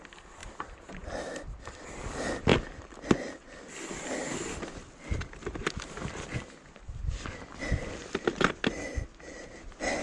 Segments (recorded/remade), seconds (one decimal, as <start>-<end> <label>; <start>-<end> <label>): 0.0-10.0 recorded